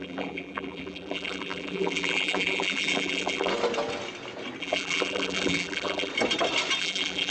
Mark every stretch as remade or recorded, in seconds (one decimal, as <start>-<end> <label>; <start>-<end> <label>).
0.0-3.5 remade; 3.5-4.6 recorded; 4.6-6.1 remade; 6.1-6.8 recorded; 6.8-7.3 remade